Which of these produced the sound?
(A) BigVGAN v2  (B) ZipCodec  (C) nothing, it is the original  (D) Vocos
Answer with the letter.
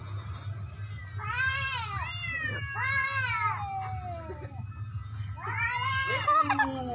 C